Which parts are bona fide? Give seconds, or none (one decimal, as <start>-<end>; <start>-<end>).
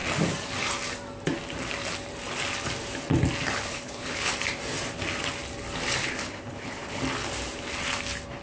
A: 0.0-3.7; 4.3-6.0; 7.0-8.4